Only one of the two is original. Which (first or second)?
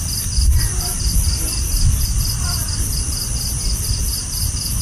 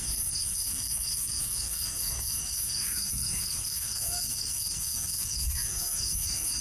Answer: first